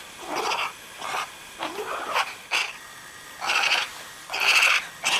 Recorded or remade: recorded